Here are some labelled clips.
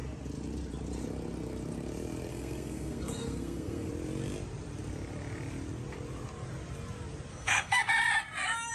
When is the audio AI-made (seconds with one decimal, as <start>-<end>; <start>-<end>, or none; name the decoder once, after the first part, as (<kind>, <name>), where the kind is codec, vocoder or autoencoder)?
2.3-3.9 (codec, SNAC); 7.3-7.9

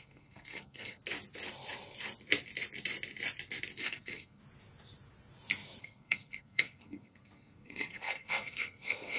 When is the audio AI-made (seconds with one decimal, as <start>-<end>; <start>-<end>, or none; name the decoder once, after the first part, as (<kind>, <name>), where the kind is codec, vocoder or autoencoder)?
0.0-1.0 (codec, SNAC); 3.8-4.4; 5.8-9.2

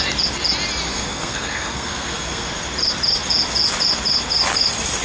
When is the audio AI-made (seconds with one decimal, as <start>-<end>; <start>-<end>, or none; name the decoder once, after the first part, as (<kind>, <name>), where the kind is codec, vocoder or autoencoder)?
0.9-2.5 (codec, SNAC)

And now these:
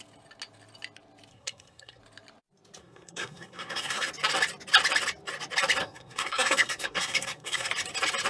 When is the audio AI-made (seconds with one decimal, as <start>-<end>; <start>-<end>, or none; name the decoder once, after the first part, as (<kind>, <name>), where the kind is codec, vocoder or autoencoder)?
1.3-2.0 (codec, SNAC); 2.8-4.1; 5.8-7.7